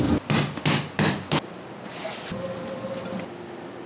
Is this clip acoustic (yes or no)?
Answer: yes